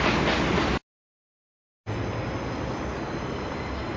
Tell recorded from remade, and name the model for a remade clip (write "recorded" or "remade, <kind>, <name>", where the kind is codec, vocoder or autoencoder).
recorded